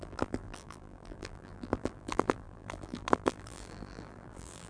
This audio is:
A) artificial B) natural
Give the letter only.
A